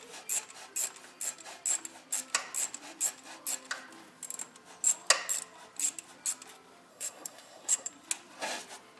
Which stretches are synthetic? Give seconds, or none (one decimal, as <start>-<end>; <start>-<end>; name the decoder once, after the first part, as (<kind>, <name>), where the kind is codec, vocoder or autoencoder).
6.9-7.9 (codec, SNAC)